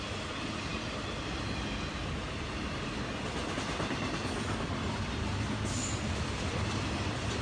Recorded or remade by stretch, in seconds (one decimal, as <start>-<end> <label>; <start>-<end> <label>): 0.0-7.4 recorded